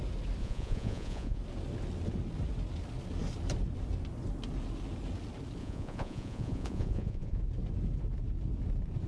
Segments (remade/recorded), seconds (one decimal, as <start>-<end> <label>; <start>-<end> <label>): 0.0-0.4 recorded; 0.4-1.4 remade; 1.4-5.6 recorded; 5.6-7.4 remade; 7.4-9.1 recorded